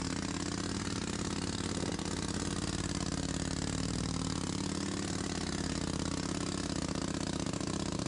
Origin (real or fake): real